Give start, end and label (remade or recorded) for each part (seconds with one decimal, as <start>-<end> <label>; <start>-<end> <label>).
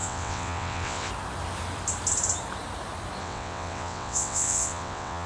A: 0.0-1.1 remade; 1.1-3.2 recorded; 3.2-5.3 remade